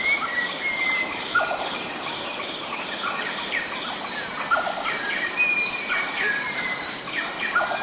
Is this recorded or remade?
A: remade